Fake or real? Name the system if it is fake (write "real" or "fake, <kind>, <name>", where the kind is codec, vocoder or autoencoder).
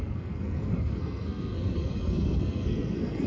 fake, codec, SNAC